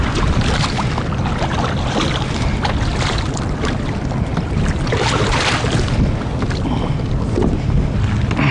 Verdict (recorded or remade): recorded